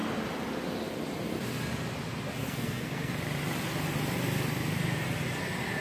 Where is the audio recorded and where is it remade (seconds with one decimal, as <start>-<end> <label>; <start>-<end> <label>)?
0.0-2.4 recorded; 2.4-3.1 remade; 3.1-5.8 recorded